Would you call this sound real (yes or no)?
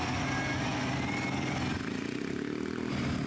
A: yes